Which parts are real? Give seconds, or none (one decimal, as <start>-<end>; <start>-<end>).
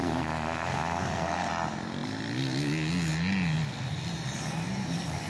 1.5-5.3